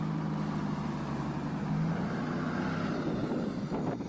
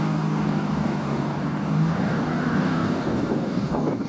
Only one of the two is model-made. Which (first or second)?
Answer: second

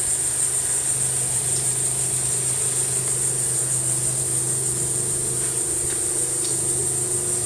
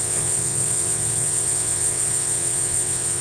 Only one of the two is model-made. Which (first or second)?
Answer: second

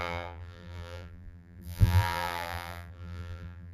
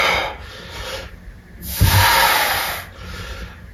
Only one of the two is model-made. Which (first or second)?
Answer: first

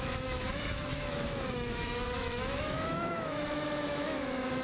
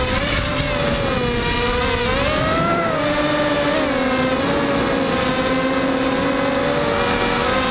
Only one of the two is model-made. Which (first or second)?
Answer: first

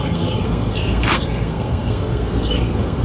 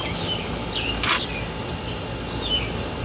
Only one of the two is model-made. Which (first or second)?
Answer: first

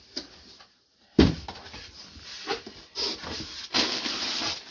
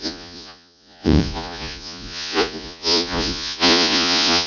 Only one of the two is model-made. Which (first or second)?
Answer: second